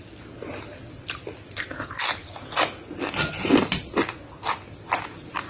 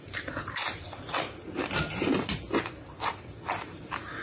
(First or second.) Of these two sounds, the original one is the first